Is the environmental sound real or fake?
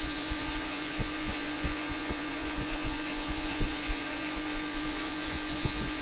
fake